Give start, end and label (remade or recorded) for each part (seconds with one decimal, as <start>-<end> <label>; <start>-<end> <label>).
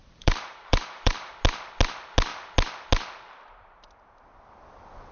0.0-1.3 remade; 1.3-5.1 recorded